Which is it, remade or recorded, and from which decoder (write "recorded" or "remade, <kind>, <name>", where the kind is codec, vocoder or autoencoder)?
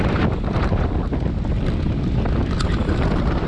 recorded